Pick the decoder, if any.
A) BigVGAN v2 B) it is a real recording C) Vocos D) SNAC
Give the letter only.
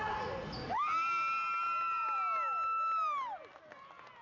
B